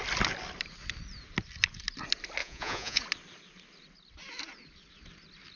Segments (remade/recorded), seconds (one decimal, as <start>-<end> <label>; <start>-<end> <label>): 0.0-2.4 recorded; 2.4-3.0 remade; 3.0-5.6 recorded